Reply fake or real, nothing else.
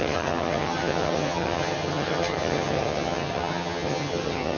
fake